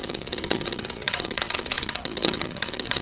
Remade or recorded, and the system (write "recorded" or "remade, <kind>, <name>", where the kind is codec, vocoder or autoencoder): remade, vocoder, Vocos